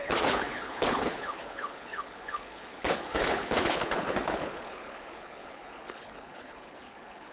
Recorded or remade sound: remade